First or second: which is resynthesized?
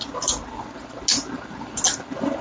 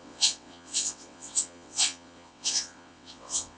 second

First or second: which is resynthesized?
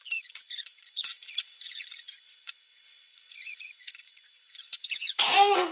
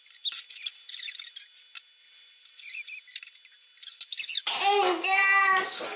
first